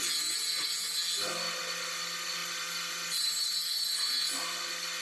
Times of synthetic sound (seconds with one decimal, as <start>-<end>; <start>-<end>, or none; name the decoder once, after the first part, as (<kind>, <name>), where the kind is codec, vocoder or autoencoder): none